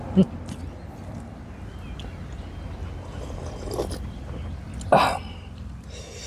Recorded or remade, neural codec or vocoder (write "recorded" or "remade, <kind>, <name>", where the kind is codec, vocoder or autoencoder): recorded